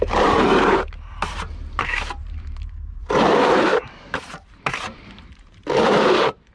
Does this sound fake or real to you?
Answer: fake